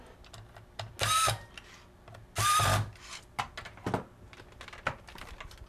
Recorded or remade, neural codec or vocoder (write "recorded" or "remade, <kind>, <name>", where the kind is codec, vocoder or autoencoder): recorded